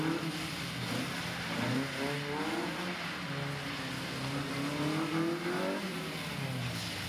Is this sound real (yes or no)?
yes